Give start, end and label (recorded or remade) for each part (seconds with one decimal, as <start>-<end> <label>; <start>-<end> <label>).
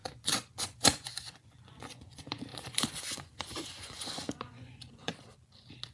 0.0-5.1 remade; 5.1-5.9 recorded